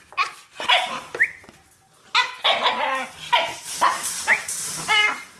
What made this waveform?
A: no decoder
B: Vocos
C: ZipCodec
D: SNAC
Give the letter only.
A